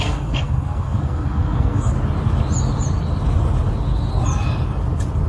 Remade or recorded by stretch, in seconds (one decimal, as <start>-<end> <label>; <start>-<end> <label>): 0.0-1.9 remade; 1.9-5.3 recorded